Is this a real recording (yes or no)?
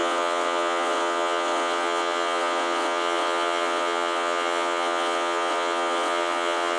no